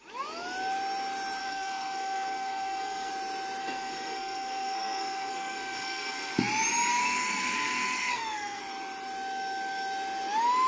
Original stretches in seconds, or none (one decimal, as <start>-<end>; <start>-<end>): 0.0-1.4; 3.1-3.6; 6.3-6.9; 8.6-10.7